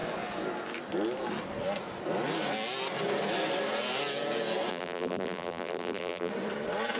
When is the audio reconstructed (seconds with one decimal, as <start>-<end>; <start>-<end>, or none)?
4.7-6.3